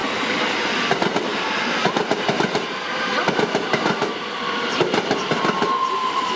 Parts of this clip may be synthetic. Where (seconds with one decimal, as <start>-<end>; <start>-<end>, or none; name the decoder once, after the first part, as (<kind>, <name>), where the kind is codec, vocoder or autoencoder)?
0.0-6.4 (vocoder, BigVGAN v2)